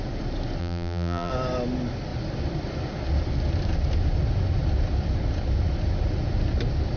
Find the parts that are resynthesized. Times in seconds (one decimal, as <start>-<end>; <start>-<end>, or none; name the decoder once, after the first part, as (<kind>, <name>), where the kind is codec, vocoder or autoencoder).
0.6-1.3 (vocoder, BigVGAN v2)